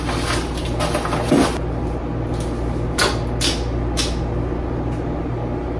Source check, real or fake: real